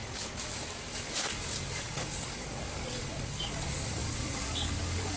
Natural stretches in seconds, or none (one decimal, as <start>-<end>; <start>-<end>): none